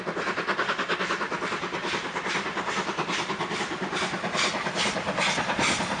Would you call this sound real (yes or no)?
yes